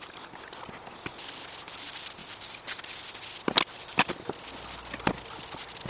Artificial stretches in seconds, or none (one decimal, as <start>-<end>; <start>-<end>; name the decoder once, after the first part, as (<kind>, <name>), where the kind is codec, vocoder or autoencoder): none